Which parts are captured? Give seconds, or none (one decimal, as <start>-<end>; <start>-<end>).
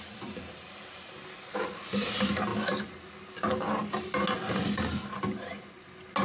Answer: 0.0-2.5; 3.8-6.2